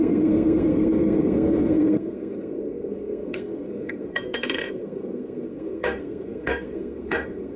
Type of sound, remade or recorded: remade